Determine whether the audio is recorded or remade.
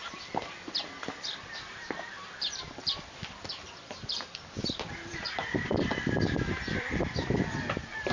remade